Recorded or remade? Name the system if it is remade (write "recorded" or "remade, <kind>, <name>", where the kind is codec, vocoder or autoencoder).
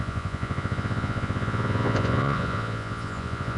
remade, vocoder, Vocos